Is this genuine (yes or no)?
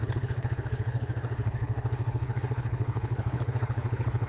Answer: no